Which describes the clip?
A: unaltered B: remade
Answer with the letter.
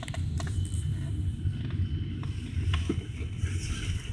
A